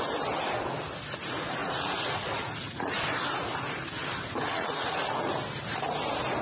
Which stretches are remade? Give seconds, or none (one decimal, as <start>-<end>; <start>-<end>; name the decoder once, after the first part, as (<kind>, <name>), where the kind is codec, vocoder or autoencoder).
1.6-3.0 (vocoder, Vocos); 4.5-5.3